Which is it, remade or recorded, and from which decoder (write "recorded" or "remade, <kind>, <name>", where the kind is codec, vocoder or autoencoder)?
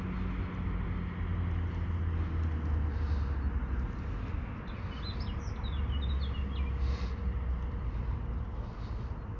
recorded